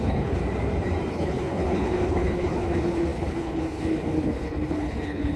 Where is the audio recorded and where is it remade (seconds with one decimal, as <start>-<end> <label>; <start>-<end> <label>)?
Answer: 0.0-0.4 remade; 0.4-1.1 recorded; 1.1-5.4 remade